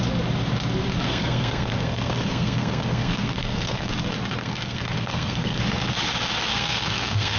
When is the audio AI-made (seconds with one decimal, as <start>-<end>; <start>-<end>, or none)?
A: 1.0-3.9; 4.4-5.6; 6.5-7.4